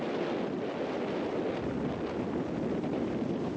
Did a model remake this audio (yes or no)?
no